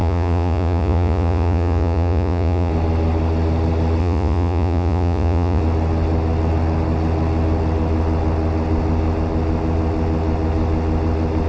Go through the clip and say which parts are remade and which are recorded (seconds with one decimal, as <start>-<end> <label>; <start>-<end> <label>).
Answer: 0.0-2.7 remade; 2.7-4.0 recorded; 4.0-5.6 remade; 5.6-11.5 recorded